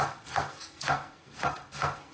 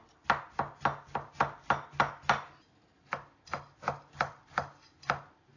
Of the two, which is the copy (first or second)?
first